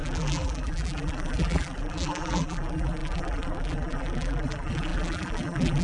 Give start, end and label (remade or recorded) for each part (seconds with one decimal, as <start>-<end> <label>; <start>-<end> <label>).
0.0-5.8 remade